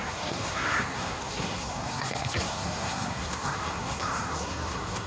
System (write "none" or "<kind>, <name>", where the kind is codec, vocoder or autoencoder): codec, SNAC